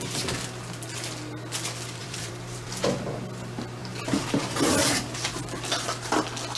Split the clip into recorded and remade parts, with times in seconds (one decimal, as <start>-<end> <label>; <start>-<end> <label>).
0.0-2.0 recorded; 2.0-2.8 remade; 2.8-6.6 recorded

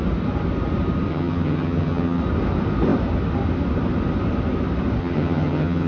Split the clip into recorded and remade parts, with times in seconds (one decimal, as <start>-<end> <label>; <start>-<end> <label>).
0.0-1.1 recorded; 1.1-2.2 remade; 2.2-5.0 recorded; 5.0-5.9 remade

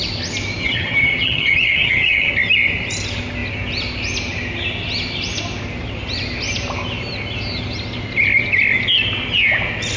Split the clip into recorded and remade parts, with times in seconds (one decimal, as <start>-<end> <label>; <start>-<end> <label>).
0.0-0.6 recorded; 0.6-2.3 remade; 2.3-10.0 recorded

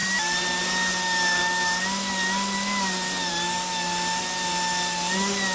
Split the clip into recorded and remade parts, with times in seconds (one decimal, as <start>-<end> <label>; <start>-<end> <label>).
0.0-5.5 recorded